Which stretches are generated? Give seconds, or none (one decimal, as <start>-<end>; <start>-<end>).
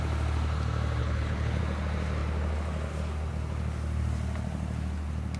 1.0-1.6